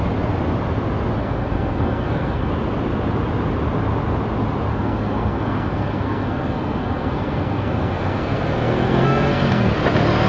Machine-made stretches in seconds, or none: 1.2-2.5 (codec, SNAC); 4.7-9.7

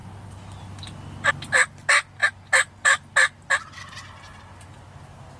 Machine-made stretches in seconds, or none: none

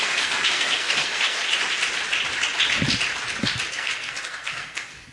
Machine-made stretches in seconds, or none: 0.0-1.4 (codec, SNAC); 3.7-5.1